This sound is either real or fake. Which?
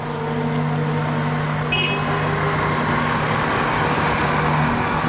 real